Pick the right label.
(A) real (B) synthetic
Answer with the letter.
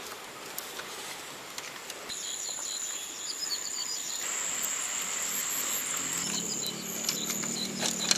A